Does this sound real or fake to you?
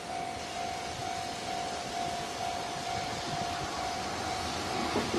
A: real